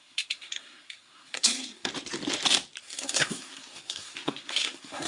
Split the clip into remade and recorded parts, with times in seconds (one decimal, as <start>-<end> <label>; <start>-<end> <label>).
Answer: 0.0-1.9 remade; 1.9-2.8 recorded; 2.8-5.1 remade